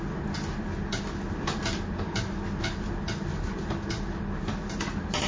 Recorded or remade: recorded